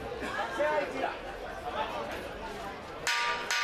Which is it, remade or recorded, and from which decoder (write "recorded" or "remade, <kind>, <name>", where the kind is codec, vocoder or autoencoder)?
recorded